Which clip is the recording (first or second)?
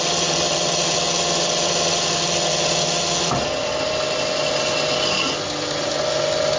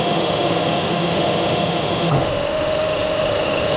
first